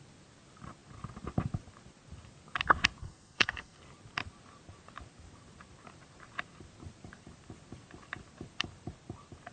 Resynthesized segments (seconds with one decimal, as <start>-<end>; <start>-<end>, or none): 3.0-3.8